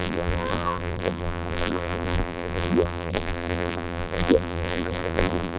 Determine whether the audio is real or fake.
fake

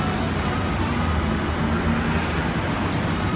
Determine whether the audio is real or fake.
real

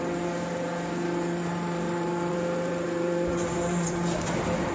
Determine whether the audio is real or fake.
fake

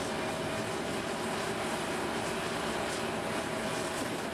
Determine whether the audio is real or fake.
real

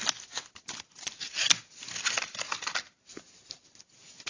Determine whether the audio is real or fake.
real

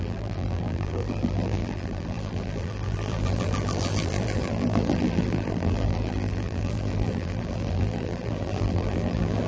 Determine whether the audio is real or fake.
fake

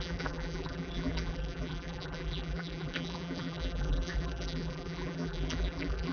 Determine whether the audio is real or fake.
fake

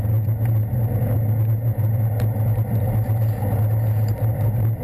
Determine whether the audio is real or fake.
real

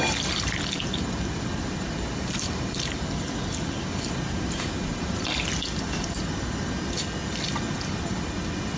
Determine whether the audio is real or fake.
fake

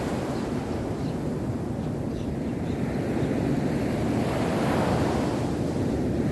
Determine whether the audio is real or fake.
fake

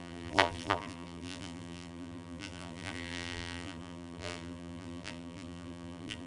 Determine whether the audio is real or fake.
fake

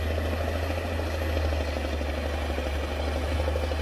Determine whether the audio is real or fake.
real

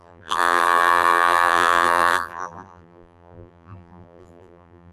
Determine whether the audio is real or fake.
fake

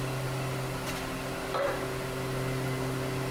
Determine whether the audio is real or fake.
real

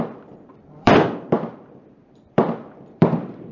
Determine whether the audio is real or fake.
fake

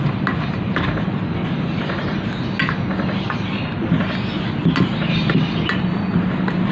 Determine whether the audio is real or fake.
real